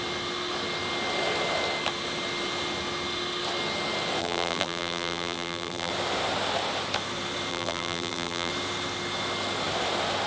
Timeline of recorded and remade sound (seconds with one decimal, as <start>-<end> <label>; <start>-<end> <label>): 0.0-4.2 recorded; 4.2-5.9 remade; 5.9-7.5 recorded; 7.5-8.5 remade; 8.5-10.3 recorded